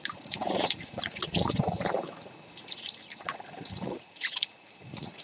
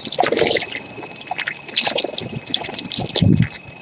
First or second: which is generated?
first